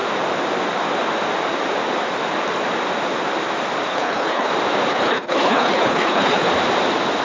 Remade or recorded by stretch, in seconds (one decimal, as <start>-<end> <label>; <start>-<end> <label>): 0.0-3.9 recorded; 3.9-4.5 remade; 4.5-4.9 recorded; 4.9-6.5 remade; 6.5-7.2 recorded